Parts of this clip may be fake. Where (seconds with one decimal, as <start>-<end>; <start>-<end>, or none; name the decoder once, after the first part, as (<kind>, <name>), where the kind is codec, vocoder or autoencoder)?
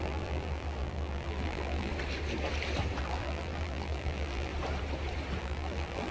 0.0-1.9 (vocoder, BigVGAN v2); 3.0-4.5; 5.4-6.1